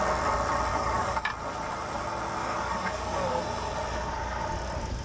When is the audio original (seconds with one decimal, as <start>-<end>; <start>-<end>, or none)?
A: 0.0-0.7; 1.3-2.4; 3.4-5.0